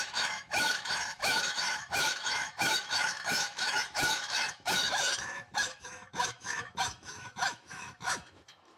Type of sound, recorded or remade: remade